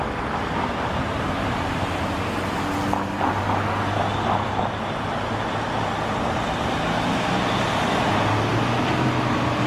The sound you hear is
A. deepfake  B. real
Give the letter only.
B